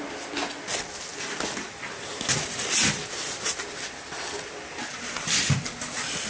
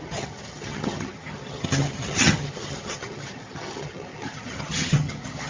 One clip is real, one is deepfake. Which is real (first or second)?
first